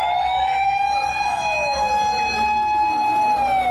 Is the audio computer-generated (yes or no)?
yes